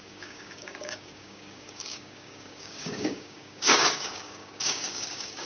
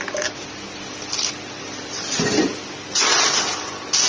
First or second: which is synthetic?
first